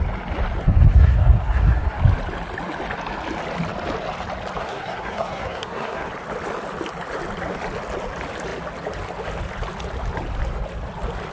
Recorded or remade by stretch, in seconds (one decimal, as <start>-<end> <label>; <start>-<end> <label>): 0.0-0.6 recorded; 0.6-2.0 remade; 2.0-4.6 recorded; 4.6-6.1 remade; 6.1-11.3 recorded